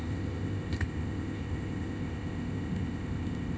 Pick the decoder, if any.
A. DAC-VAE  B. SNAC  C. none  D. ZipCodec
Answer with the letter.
D